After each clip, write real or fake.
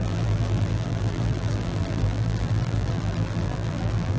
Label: fake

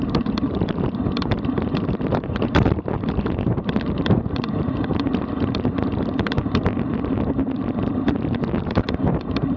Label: fake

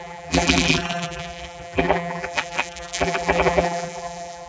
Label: fake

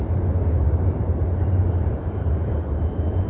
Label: fake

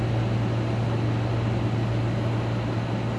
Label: real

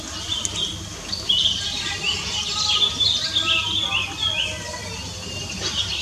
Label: real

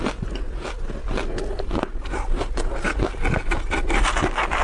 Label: real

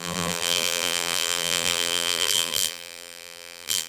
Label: fake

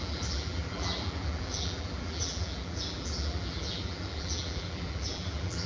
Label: fake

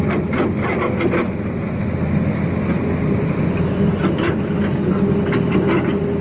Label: real